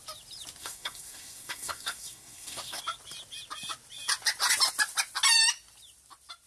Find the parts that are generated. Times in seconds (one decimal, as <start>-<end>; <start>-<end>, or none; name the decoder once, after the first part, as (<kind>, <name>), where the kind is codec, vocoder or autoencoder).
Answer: 0.6-2.8 (codec, SNAC)